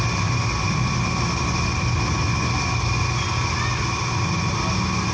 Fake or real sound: real